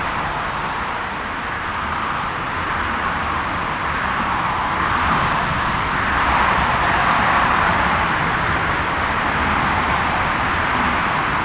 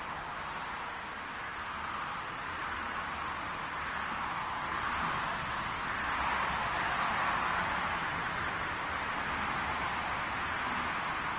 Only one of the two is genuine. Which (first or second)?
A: second